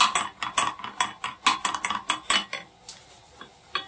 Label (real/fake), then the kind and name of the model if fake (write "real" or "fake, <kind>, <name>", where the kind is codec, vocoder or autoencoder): real